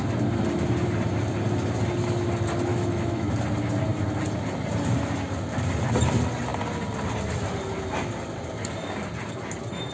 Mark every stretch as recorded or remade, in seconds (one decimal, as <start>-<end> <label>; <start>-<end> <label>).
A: 0.0-2.7 recorded; 2.7-3.3 remade; 3.3-9.9 recorded